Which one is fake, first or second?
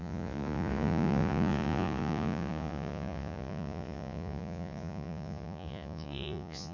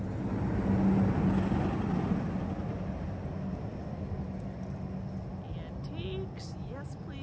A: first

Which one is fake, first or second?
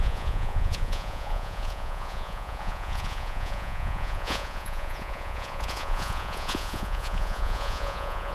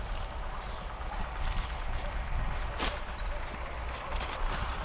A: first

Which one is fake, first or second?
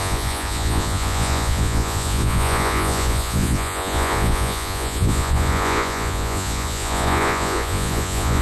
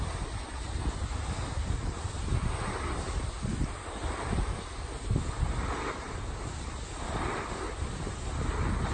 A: first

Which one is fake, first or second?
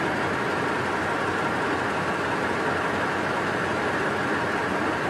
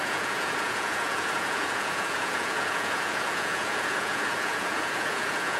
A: second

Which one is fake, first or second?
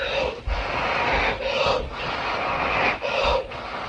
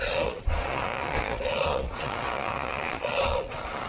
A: second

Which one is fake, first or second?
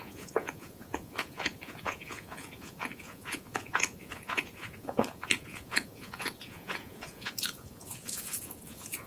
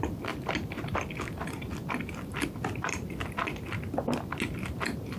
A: first